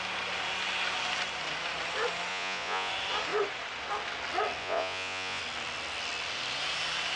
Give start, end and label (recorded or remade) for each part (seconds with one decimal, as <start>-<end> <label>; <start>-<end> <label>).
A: 0.0-2.3 recorded; 2.3-2.9 remade; 2.9-4.6 recorded; 4.6-5.4 remade; 5.4-7.2 recorded